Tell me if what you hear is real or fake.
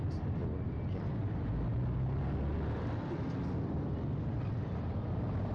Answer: real